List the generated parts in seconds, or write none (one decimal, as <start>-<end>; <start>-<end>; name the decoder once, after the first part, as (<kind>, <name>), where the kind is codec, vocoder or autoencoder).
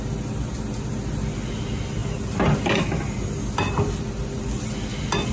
none